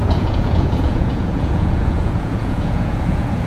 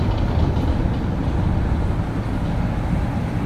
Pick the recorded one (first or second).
second